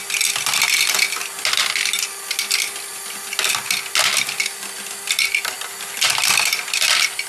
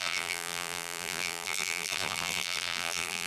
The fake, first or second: second